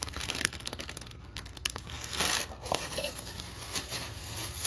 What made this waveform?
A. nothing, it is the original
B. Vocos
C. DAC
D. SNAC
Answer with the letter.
D